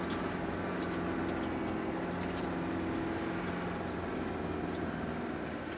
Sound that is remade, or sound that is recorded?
recorded